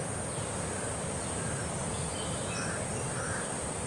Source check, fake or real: real